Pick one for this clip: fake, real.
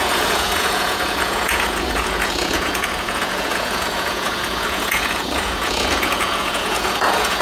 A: fake